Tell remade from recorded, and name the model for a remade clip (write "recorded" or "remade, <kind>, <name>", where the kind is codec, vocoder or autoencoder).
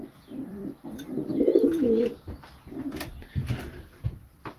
remade, vocoder, BigVGAN v2